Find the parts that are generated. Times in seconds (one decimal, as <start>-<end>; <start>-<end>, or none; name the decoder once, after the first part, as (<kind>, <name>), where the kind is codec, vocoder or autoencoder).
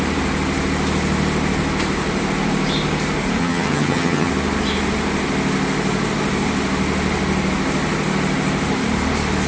3.4-4.3 (vocoder, HiFi-GAN)